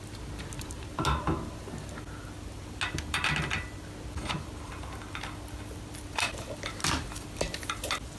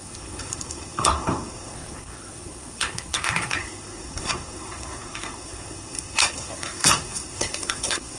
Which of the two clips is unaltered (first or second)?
first